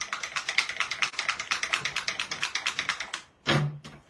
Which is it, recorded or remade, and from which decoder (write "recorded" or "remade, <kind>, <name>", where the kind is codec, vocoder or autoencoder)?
recorded